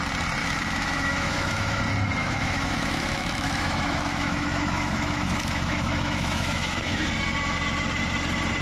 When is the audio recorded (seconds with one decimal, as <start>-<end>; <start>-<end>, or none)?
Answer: 0.0-0.4; 1.8-2.2; 7.1-8.6